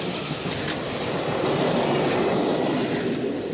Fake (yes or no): no